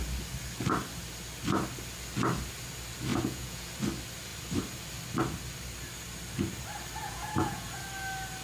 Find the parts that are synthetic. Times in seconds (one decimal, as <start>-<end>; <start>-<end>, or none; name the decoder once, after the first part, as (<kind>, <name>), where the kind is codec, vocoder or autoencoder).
3.1-3.7 (vocoder, Vocos); 7.0-7.8